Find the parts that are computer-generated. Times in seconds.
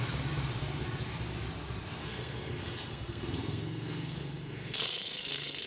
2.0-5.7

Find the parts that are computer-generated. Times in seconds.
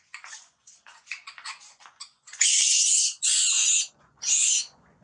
0.0-5.0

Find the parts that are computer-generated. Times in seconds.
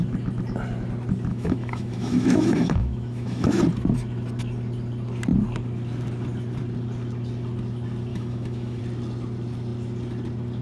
1.3-3.6; 8.1-8.8